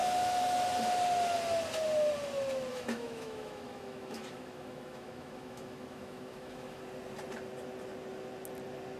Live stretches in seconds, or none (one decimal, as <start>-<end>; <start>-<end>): 0.0-2.7; 6.8-9.0